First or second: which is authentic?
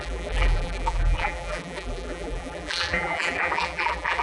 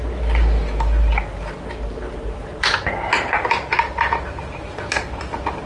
second